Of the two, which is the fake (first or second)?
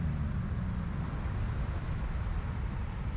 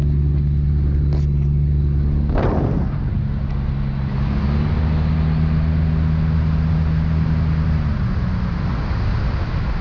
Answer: first